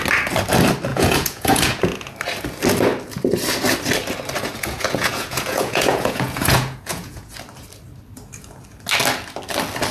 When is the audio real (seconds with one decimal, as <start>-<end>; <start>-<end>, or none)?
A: 0.0-0.9; 1.8-4.5; 7.3-9.9